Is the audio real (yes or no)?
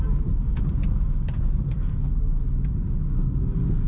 yes